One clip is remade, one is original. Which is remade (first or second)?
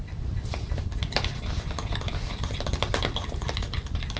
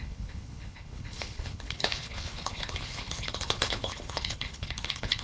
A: second